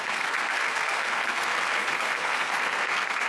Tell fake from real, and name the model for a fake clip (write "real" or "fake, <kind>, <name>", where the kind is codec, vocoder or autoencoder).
fake, codec, SNAC